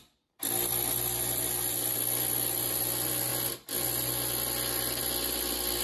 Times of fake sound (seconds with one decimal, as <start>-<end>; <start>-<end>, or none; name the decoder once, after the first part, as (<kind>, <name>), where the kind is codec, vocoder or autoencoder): none